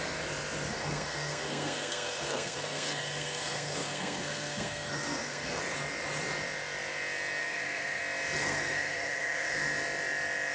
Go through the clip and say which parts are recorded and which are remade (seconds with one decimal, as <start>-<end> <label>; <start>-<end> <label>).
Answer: 0.0-0.7 recorded; 0.7-5.6 remade; 5.6-7.4 recorded; 7.4-8.0 remade; 8.0-8.4 recorded; 8.4-9.6 remade; 9.6-10.5 recorded